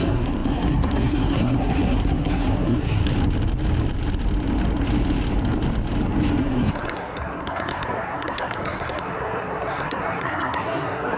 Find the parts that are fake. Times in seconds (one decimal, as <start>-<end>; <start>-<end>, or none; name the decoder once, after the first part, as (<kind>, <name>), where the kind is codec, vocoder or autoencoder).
0.0-3.0 (codec, SNAC); 6.4-11.2